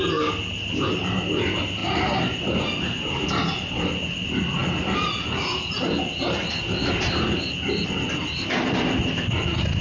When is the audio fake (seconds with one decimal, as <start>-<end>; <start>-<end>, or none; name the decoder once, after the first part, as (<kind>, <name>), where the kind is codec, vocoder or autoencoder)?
none